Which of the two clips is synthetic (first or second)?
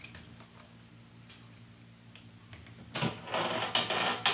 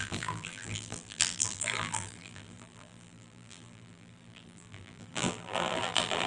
second